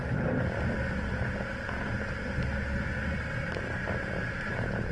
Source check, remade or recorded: recorded